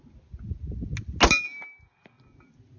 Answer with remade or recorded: recorded